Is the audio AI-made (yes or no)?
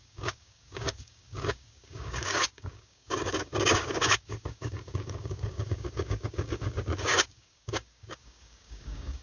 yes